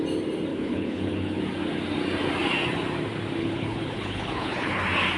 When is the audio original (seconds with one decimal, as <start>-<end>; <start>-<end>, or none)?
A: 0.0-0.5; 1.4-3.4; 4.8-5.2